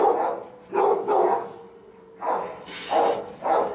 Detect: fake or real real